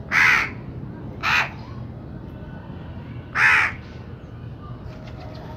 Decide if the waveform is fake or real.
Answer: real